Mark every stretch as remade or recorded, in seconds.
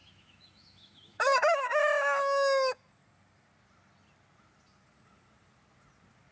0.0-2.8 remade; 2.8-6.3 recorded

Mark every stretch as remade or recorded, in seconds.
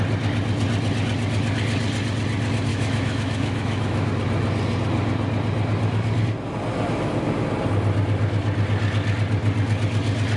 0.0-2.7 recorded; 2.7-4.1 remade; 4.1-10.4 recorded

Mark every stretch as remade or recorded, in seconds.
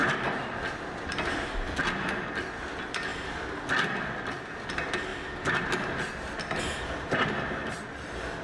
0.0-8.4 recorded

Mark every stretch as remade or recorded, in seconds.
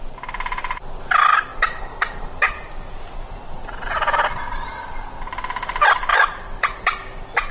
0.0-7.5 recorded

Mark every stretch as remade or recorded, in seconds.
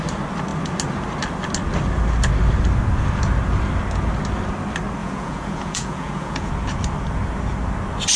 0.0-5.0 recorded; 5.0-6.5 remade; 6.5-8.2 recorded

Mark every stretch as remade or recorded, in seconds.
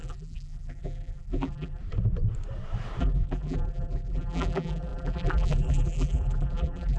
0.0-1.8 remade; 1.8-3.0 recorded; 3.0-7.0 remade